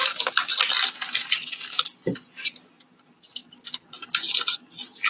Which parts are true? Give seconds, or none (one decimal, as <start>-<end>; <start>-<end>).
0.0-5.1